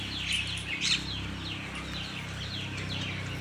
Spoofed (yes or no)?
no